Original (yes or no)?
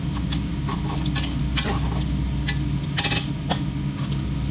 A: yes